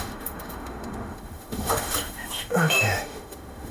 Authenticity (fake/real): fake